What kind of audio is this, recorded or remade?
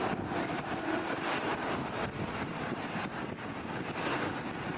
recorded